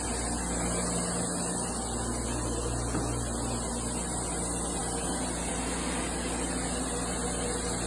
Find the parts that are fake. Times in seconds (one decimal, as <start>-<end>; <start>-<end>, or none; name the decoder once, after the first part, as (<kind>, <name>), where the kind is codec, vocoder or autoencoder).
none